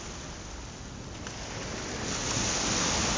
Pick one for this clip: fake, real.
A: real